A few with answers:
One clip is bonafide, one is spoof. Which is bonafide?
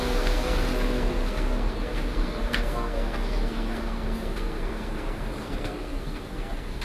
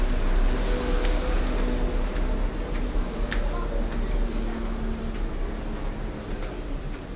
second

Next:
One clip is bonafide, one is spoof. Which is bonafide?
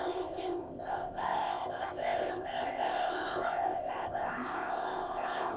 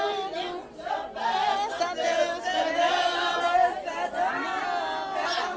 second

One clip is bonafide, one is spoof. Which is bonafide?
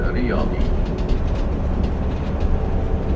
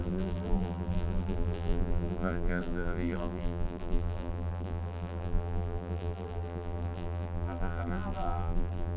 first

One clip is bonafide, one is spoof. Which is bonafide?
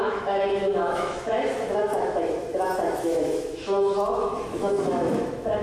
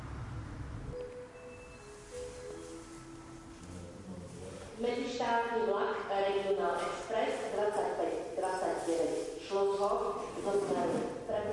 second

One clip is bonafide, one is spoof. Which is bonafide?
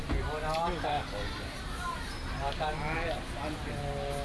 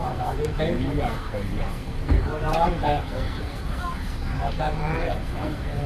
first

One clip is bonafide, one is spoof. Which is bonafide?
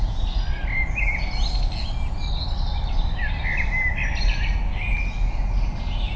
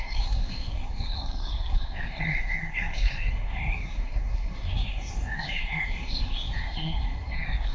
first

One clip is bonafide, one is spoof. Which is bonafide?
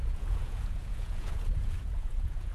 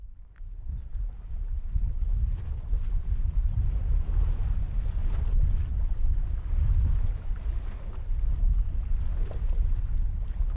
second